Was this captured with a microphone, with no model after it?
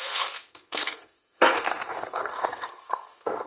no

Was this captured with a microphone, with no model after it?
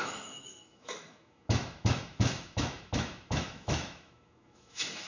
no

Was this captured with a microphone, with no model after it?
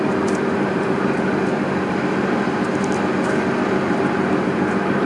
yes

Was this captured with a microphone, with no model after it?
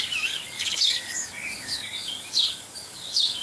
no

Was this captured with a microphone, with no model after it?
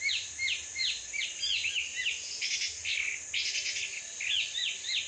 yes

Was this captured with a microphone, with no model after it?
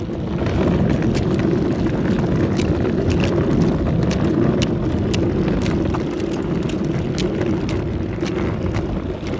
yes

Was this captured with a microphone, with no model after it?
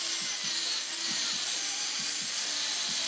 yes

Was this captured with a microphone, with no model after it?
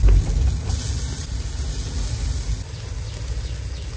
yes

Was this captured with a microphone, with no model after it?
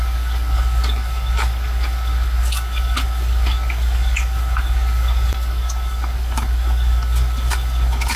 no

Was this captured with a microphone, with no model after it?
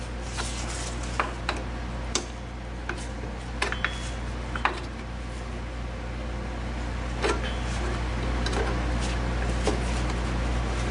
yes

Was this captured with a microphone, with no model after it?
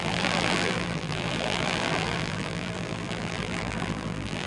no